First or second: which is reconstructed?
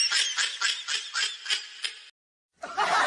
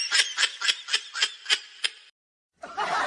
second